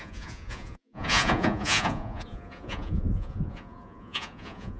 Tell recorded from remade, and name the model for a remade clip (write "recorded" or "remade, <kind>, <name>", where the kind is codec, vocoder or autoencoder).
remade, vocoder, Vocos